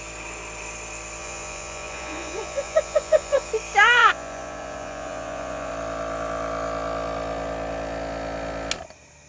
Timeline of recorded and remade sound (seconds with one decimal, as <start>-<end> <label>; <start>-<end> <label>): 0.0-1.2 recorded; 1.2-3.5 remade; 3.5-4.0 recorded; 4.0-5.7 remade; 5.7-9.3 recorded

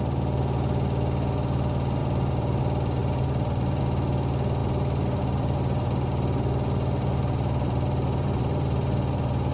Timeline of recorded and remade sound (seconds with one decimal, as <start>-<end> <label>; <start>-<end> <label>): 0.0-2.0 recorded; 2.0-2.6 remade; 2.6-3.0 recorded; 3.0-3.8 remade; 3.8-4.6 recorded; 4.6-9.5 remade

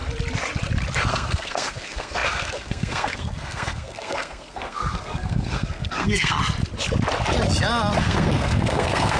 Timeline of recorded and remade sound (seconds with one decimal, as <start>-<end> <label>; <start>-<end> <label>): 0.0-1.1 recorded; 1.1-6.4 remade; 6.4-8.0 recorded; 8.0-9.2 remade

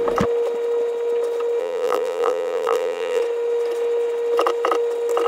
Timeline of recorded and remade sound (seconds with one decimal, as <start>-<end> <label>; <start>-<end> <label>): 0.0-1.6 recorded; 1.6-3.2 remade; 3.2-5.3 recorded

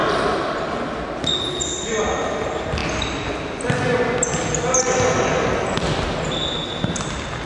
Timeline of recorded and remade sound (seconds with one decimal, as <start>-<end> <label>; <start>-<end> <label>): 0.0-7.5 recorded

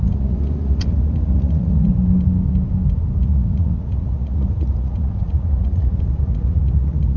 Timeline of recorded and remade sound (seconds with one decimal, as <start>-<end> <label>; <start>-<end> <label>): 0.0-1.9 remade; 1.9-3.2 recorded; 3.2-7.2 remade

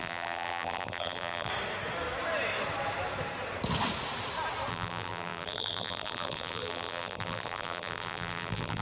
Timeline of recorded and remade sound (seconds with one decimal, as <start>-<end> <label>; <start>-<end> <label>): 0.0-1.5 remade; 1.5-4.7 recorded; 4.7-8.8 remade